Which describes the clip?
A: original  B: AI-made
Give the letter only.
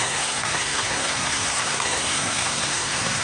B